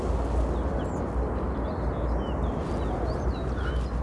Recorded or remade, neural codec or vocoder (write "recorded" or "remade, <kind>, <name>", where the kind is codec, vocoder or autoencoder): recorded